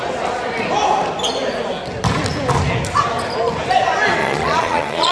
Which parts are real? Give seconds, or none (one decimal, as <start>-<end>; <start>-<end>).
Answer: 0.0-4.2